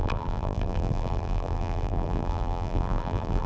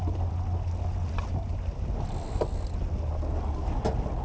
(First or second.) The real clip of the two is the second